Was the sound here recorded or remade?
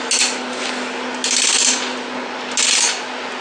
recorded